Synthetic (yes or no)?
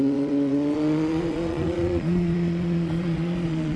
yes